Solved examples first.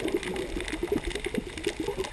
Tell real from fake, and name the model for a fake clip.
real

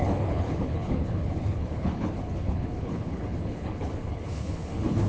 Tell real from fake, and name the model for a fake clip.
fake, codec, HILCodec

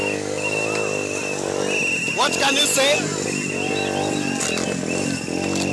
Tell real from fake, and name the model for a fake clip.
real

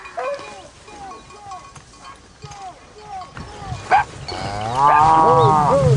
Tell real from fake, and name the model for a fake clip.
real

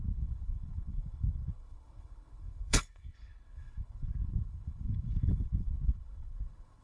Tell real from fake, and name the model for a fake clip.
fake, codec, HILCodec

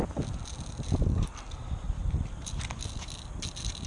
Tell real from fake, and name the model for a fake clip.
real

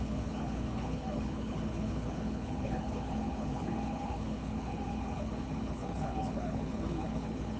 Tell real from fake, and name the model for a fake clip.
fake, codec, HILCodec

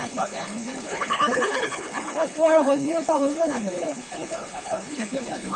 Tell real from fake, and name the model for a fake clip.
fake, codec, HILCodec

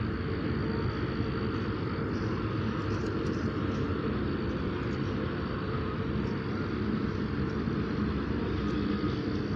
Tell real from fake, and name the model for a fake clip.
real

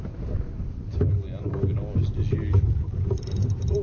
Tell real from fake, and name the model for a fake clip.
real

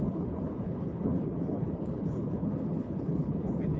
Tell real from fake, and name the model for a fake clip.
fake, codec, HILCodec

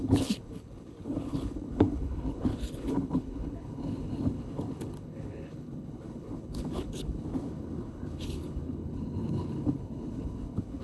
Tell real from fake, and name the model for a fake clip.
fake, codec, HILCodec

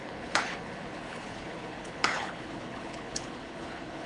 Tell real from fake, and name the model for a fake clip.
fake, codec, HILCodec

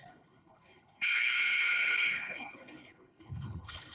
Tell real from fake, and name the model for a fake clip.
fake, codec, HILCodec